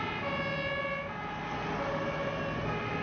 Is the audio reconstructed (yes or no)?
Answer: no